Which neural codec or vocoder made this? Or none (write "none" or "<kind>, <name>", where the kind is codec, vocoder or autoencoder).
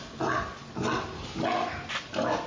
none